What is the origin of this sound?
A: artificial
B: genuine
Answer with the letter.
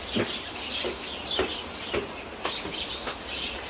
A